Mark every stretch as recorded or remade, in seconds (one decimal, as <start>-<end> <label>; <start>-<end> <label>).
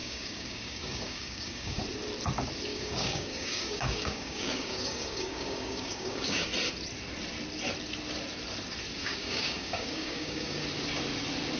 0.0-1.8 remade; 1.8-2.7 recorded; 2.7-6.5 remade; 6.5-9.0 recorded; 9.0-10.6 remade; 10.6-11.6 recorded